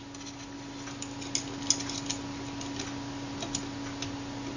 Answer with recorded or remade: recorded